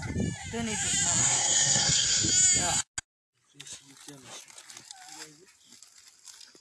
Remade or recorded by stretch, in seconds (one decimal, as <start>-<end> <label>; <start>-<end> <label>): 0.0-1.2 recorded; 1.2-2.3 remade; 2.3-6.6 recorded